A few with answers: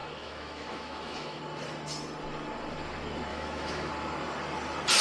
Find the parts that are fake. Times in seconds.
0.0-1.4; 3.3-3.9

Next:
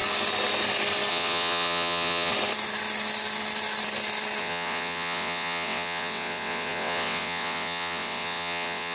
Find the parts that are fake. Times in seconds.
1.1-2.3; 4.4-8.9